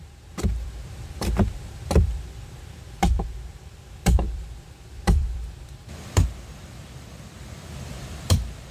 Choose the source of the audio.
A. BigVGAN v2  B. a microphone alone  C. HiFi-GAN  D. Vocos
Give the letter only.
A